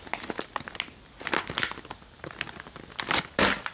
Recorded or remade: recorded